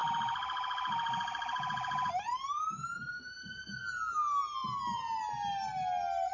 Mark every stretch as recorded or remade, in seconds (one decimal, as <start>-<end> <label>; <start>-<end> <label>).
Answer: 0.0-3.8 remade; 3.8-4.6 recorded; 4.6-5.2 remade; 5.2-6.3 recorded